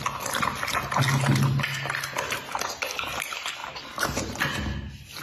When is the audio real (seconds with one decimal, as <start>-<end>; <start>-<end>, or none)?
0.0-3.6; 4.4-5.2